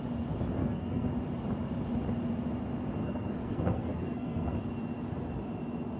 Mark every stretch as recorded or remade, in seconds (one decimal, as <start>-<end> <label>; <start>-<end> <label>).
0.0-0.6 recorded; 0.6-1.1 remade; 1.1-3.0 recorded; 3.0-4.6 remade; 4.6-6.0 recorded